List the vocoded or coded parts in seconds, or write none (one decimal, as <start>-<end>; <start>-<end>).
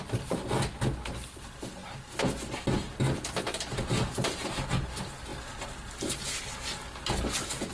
none